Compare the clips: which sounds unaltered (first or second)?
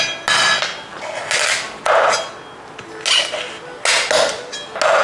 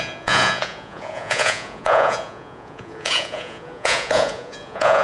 first